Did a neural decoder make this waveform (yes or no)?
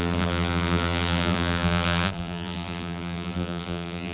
yes